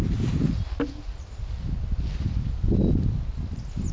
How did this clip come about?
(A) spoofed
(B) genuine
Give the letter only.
B